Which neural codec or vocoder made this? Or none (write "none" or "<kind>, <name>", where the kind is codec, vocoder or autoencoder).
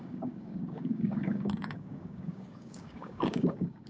codec, DAC